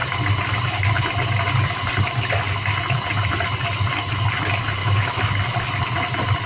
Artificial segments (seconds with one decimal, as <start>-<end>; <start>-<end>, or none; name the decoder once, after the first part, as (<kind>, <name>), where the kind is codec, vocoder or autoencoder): 4.8-5.3 (autoencoder, DAC-VAE)